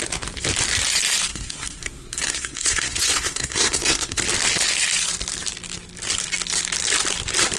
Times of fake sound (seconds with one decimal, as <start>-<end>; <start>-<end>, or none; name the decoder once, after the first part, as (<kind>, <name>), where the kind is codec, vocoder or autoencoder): 1.3-4.2 (codec, SNAC)